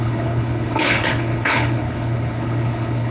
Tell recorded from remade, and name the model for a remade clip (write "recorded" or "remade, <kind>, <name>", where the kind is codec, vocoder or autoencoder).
remade, codec, HILCodec